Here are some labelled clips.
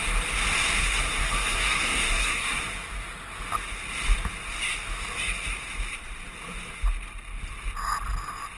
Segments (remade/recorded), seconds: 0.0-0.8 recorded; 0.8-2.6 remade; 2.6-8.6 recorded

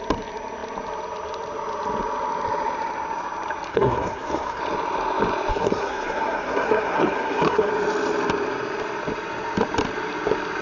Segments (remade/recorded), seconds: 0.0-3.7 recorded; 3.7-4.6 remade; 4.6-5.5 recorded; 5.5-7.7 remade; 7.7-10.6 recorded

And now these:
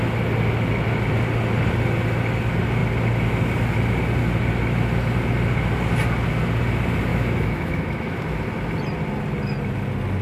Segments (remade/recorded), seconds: 0.0-7.1 recorded; 7.1-8.2 remade; 8.2-10.2 recorded

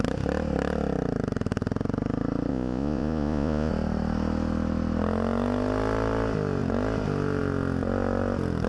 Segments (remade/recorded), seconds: 0.0-2.5 recorded; 2.5-3.7 remade; 3.7-8.7 recorded

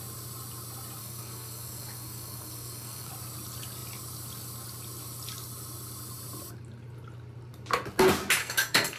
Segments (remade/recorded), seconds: 0.0-1.0 recorded; 1.0-3.1 remade; 3.1-8.4 recorded; 8.4-9.0 remade

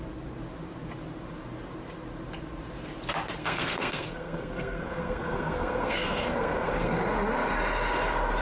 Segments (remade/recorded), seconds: 0.0-3.4 recorded; 3.4-7.0 remade; 7.0-8.4 recorded